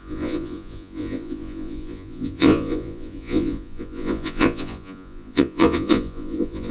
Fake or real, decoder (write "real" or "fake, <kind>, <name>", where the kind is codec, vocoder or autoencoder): fake, vocoder, Vocos